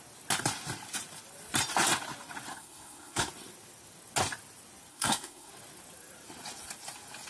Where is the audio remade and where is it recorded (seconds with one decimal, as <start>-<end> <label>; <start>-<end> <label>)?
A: 0.0-2.5 recorded; 2.5-3.3 remade; 3.3-4.9 recorded; 4.9-5.5 remade; 5.5-7.3 recorded